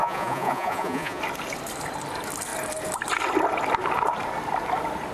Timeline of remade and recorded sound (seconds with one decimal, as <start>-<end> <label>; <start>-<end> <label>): 0.0-1.2 remade; 1.2-5.1 recorded